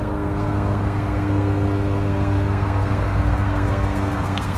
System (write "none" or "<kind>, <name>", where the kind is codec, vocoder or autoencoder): codec, SNAC